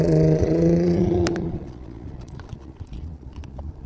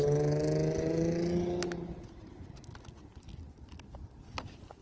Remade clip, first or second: first